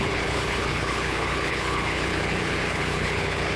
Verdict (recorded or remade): remade